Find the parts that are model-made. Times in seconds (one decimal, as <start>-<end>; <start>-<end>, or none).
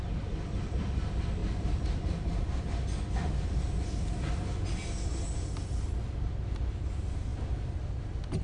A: 1.4-2.6